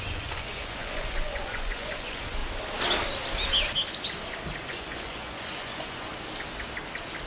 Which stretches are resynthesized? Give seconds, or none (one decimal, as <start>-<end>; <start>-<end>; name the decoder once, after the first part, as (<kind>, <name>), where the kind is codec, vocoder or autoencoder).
0.0-2.4 (vocoder, Vocos); 4.6-6.1